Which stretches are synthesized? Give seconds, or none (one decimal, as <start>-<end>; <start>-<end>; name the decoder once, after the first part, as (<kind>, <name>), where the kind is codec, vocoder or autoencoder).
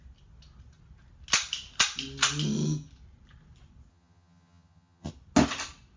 3.9-5.1 (vocoder, HiFi-GAN)